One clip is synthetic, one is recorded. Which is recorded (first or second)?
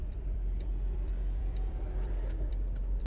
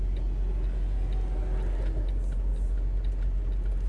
second